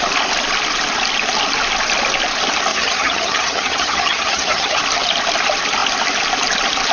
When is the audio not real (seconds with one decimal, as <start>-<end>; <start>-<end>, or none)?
2.7-4.8